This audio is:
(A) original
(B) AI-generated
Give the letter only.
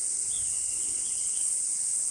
B